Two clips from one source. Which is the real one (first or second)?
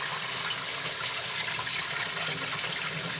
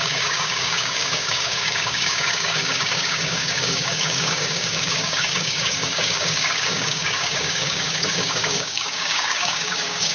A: first